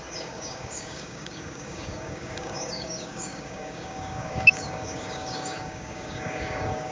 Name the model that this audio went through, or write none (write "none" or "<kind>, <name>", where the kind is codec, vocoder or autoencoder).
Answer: codec, DAC